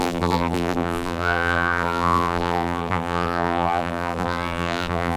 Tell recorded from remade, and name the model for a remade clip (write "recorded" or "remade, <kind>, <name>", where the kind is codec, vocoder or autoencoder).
remade, vocoder, BigVGAN v2